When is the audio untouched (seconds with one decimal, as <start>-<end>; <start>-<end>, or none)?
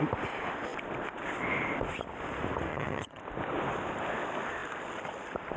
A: 0.0-2.7; 3.2-5.6